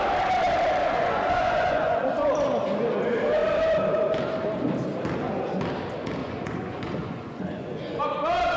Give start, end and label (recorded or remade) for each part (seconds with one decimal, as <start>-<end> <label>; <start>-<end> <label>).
0.0-0.8 recorded; 0.8-2.1 remade; 2.1-6.2 recorded; 6.2-8.0 remade; 8.0-8.6 recorded